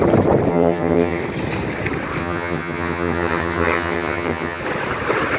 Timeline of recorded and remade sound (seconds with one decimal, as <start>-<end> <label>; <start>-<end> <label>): 0.0-0.5 recorded; 0.5-1.2 remade; 1.2-2.2 recorded; 2.2-4.6 remade; 4.6-5.4 recorded